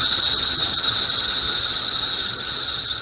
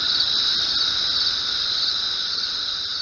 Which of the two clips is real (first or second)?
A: second